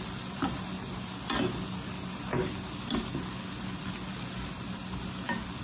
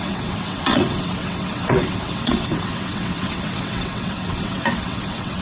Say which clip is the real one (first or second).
first